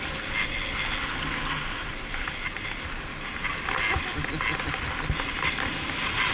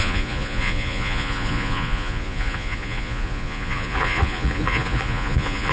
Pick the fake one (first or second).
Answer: second